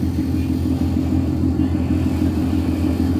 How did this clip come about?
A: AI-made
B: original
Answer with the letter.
B